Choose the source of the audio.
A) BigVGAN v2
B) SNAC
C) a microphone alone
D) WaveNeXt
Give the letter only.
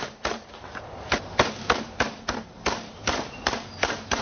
A